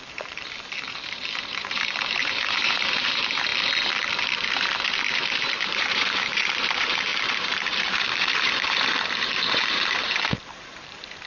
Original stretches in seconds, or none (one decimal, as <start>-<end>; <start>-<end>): 3.5-5.1